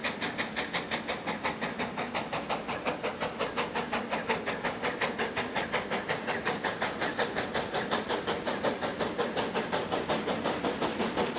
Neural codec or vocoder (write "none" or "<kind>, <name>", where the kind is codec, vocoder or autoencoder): none